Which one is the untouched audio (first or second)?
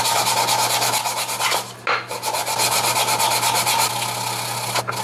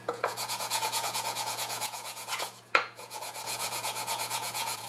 first